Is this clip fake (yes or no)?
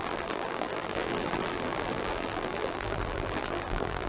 yes